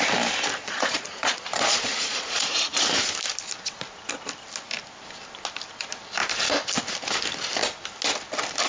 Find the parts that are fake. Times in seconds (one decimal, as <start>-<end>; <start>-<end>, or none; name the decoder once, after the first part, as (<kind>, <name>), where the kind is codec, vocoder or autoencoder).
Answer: 0.6-2.8 (vocoder, Vocos)

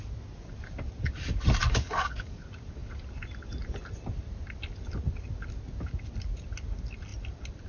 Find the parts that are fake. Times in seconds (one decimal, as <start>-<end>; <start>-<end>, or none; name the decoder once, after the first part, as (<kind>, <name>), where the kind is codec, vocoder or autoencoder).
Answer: 1.6-2.4 (codec, DAC)

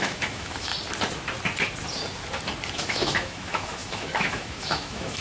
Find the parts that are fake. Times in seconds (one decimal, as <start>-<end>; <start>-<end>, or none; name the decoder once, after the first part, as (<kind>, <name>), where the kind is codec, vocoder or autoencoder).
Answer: 0.0-0.7 (autoencoder, DAC-VAE); 2.7-5.2

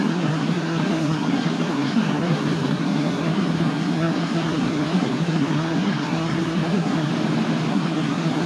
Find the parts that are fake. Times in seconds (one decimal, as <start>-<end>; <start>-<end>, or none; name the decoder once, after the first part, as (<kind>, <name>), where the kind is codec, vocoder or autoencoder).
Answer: 0.0-7.1 (codec, SNAC); 7.7-8.5

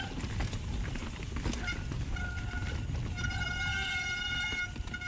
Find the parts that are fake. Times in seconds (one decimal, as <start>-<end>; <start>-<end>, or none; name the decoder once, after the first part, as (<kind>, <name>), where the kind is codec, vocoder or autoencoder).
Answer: none

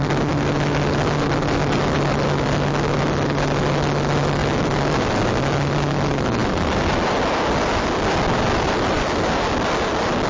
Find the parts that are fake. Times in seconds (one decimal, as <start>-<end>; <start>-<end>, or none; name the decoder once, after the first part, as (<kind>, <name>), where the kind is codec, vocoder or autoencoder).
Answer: none

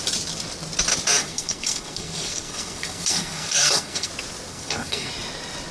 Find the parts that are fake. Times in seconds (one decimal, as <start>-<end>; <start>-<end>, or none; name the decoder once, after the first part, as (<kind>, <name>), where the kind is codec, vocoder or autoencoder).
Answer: 1.2-4.1 (codec, SNAC); 4.5-5.1

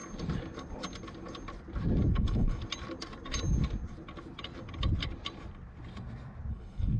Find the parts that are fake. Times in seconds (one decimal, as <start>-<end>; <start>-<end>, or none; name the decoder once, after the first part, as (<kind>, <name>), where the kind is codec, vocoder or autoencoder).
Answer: 2.1-2.6 (codec, HILCodec); 6.5-7.0